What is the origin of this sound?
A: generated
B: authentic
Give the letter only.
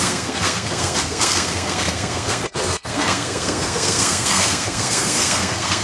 A